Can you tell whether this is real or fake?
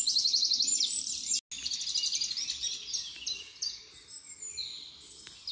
real